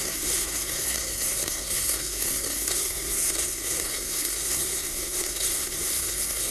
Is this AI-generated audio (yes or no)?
yes